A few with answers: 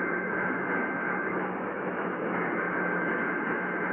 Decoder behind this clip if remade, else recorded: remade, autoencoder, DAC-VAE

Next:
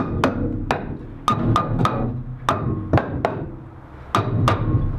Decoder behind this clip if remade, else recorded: recorded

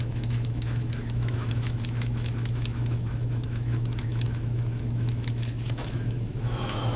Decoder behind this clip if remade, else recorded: remade, autoencoder, DAC-VAE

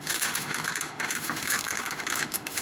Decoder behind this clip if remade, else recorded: remade, autoencoder, DAC-VAE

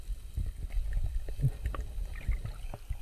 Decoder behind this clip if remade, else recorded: recorded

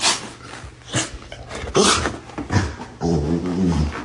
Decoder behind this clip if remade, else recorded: recorded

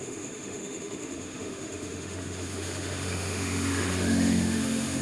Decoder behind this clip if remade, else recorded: remade, autoencoder, DAC-VAE